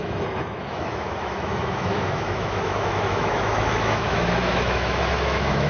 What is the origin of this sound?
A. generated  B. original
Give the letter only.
A